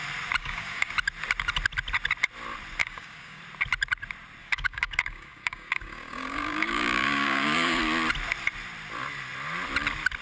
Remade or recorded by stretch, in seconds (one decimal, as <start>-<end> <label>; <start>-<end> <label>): 0.0-0.4 recorded; 0.4-0.9 remade; 0.9-2.8 recorded; 2.8-3.4 remade; 3.4-4.4 recorded; 4.4-7.8 remade; 7.8-10.2 recorded